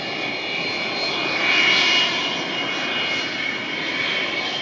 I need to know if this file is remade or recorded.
recorded